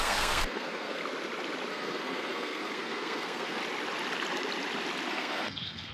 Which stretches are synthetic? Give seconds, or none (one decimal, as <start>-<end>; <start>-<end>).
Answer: 0.0-1.0; 1.7-3.6; 5.1-5.9